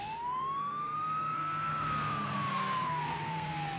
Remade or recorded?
remade